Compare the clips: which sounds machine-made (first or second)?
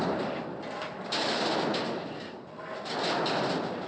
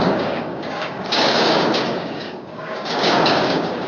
second